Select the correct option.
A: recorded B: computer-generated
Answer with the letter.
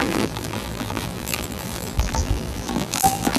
B